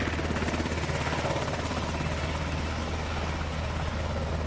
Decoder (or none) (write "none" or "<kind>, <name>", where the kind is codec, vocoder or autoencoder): none